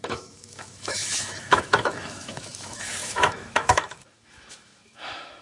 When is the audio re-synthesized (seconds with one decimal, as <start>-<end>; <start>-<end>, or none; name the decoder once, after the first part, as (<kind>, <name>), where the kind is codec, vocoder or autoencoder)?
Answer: 0.0-5.4 (autoencoder, DAC-VAE)